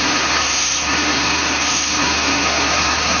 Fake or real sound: fake